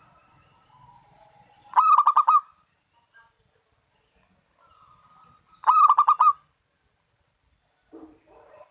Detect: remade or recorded recorded